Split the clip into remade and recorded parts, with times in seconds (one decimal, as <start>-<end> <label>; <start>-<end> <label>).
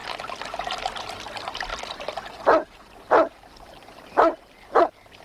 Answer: 0.0-1.0 recorded; 1.0-1.7 remade; 1.7-4.8 recorded; 4.8-5.2 remade